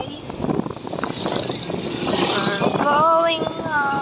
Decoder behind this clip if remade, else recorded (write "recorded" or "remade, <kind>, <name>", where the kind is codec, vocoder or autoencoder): recorded